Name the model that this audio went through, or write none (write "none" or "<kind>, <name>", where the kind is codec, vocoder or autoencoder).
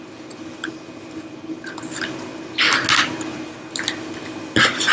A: none